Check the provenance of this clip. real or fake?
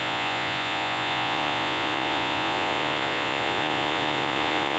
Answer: fake